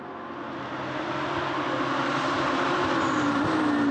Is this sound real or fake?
real